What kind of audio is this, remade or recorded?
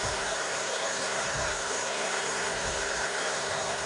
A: remade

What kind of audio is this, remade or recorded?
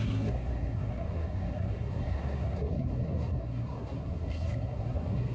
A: remade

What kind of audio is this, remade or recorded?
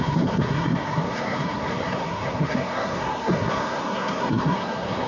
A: remade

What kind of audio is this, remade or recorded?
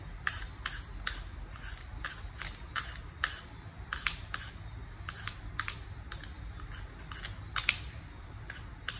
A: recorded